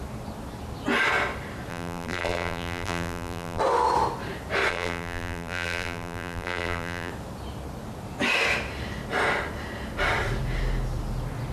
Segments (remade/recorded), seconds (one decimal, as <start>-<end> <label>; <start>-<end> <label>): 0.0-1.7 recorded; 1.7-3.6 remade; 3.6-4.7 recorded; 4.7-7.1 remade; 7.1-11.5 recorded